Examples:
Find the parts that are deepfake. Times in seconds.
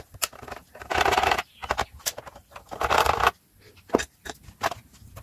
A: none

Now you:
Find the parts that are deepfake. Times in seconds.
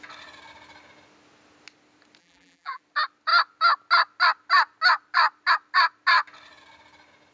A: 2.2-2.8 (vocoder, BigVGAN v2)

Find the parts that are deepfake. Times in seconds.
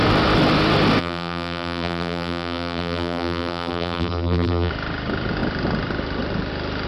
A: 1.0-4.7 (vocoder, BigVGAN v2)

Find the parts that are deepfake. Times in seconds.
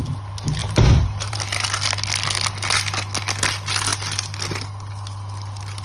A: 0.6-1.4 (vocoder, BigVGAN v2)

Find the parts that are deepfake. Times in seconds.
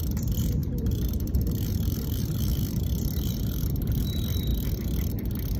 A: 0.6-4.0 (vocoder, BigVGAN v2)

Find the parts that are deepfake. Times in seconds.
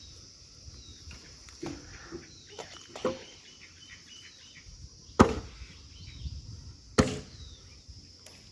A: 0.9-5.4 (vocoder, BigVGAN v2)